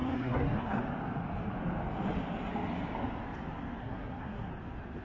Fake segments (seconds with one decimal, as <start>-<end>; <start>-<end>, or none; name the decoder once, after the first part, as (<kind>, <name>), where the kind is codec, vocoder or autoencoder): 0.0-0.8 (codec, SNAC); 3.8-4.5